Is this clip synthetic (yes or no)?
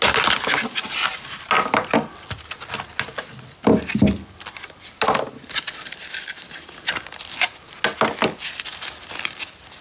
no